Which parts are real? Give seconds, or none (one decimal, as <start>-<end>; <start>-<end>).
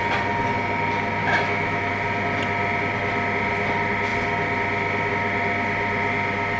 0.0-1.2; 1.9-6.6